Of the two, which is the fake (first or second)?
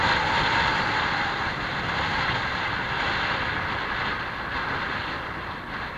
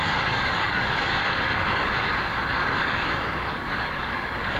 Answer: second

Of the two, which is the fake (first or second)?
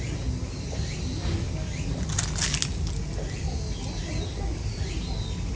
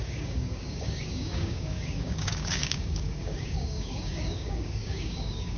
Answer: second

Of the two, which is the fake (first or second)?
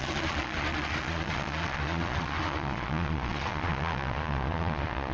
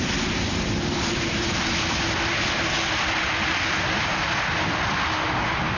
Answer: first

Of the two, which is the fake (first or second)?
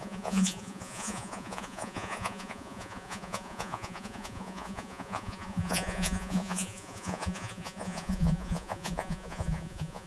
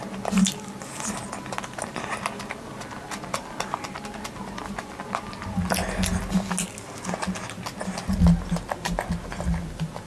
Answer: first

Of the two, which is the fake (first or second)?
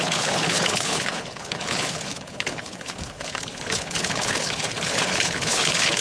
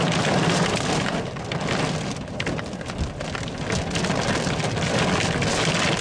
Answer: first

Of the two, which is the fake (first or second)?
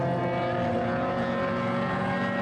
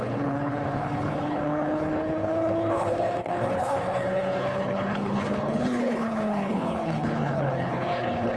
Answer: second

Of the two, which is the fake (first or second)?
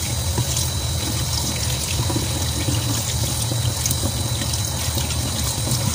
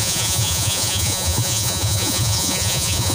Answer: second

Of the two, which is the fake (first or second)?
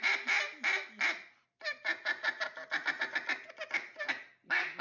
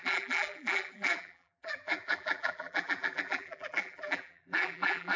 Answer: second